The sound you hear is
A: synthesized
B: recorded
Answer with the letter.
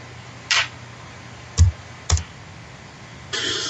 B